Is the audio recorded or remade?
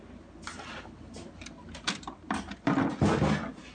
recorded